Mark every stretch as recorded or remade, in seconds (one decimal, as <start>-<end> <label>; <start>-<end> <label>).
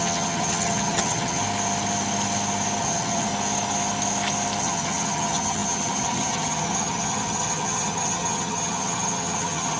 0.0-1.4 remade; 1.4-2.8 recorded; 2.8-3.3 remade; 3.3-4.6 recorded; 4.6-9.8 remade